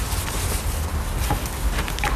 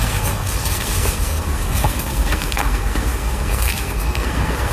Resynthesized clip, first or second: second